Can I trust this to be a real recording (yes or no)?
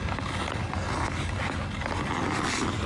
yes